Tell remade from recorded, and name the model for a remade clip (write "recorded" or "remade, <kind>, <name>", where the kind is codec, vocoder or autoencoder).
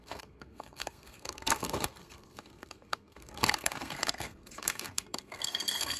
remade, codec, SNAC